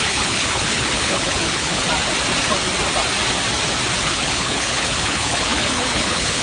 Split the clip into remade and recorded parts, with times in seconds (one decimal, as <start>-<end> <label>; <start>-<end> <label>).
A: 0.0-1.8 remade; 1.8-4.0 recorded; 4.0-6.4 remade